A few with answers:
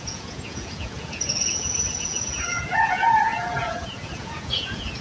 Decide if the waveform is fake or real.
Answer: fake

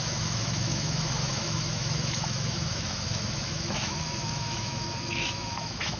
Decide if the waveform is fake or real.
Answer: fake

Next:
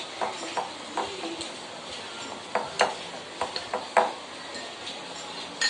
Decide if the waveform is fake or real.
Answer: real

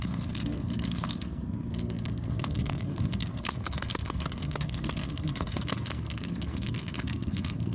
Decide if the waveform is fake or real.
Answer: fake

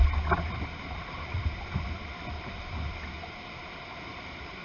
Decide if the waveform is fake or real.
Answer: real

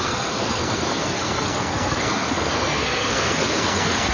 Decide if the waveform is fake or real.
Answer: fake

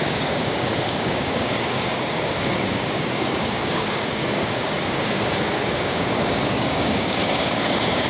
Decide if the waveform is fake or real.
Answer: fake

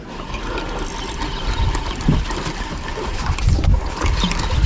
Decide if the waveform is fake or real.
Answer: real